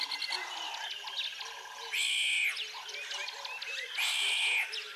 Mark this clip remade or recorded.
recorded